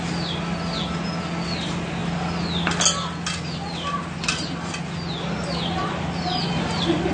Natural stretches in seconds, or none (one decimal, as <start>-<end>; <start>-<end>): 0.0-7.1